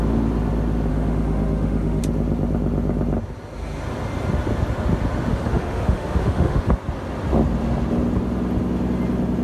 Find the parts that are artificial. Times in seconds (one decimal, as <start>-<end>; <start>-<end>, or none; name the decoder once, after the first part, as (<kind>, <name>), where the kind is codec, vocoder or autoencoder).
0.9-2.0 (autoencoder, DAC-VAE); 5.3-6.8